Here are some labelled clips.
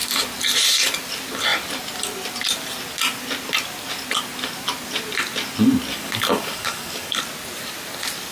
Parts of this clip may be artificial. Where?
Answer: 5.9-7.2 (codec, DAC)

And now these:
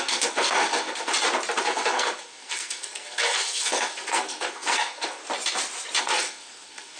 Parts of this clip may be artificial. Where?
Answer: 0.0-1.1 (codec, SNAC); 1.6-5.2; 6.0-7.0

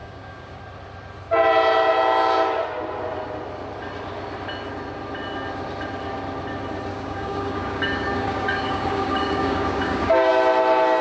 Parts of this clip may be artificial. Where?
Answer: 0.0-0.6 (codec, DAC); 6.9-10.3

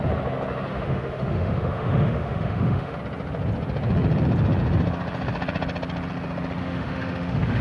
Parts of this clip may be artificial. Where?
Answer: 0.7-3.0 (autoencoder, DAC-VAE); 6.6-7.6

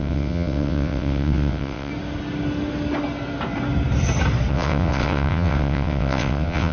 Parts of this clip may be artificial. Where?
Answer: 0.0-1.9 (vocoder, WaveNeXt); 4.5-6.7

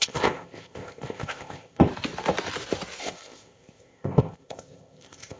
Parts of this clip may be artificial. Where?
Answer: 0.0-1.9 (codec, ZipCodec); 3.0-5.4

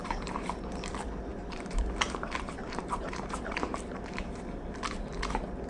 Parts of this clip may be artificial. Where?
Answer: 0.0-0.9 (vocoder, BigVGAN v2); 1.3-4.7